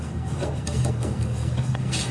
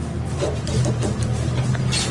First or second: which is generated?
first